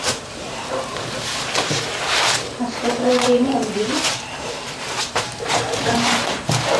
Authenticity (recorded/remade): remade